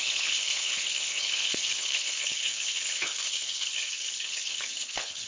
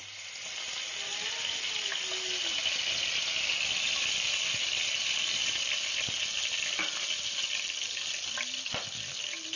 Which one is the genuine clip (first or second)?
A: second